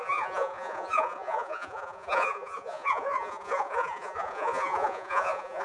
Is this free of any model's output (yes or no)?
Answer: no